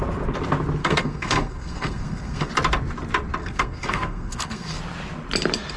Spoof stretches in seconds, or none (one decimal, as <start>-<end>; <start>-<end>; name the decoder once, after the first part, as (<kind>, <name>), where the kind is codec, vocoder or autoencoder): 0.8-2.5 (codec, SNAC); 3.4-4.8